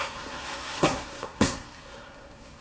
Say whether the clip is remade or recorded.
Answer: remade